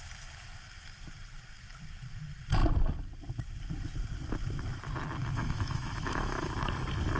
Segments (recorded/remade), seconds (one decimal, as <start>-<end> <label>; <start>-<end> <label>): 0.0-5.2 recorded; 5.2-6.5 remade; 6.5-7.2 recorded